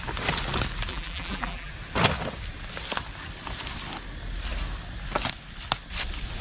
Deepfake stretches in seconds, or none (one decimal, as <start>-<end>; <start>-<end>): 0.9-1.7